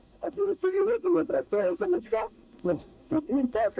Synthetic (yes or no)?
yes